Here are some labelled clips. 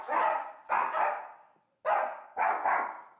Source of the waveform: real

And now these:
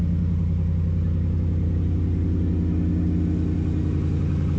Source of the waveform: real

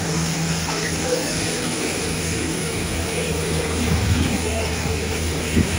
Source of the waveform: fake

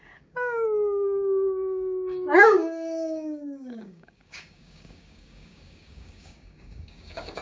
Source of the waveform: fake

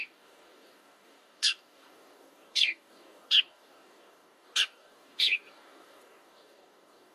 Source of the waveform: fake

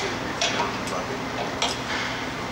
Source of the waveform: real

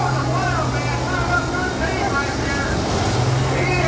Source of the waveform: real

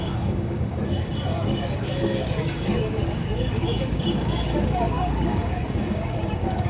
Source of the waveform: fake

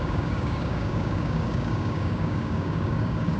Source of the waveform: fake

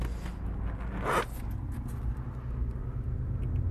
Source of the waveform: real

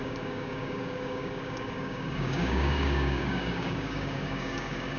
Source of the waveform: fake